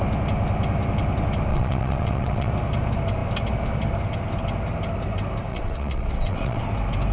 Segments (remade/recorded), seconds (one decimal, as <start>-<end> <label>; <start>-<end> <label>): 0.0-1.5 recorded; 1.5-2.5 remade; 2.5-5.5 recorded; 5.5-6.6 remade; 6.6-7.1 recorded